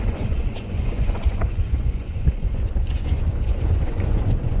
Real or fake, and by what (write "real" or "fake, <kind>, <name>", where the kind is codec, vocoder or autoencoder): fake, vocoder, Vocos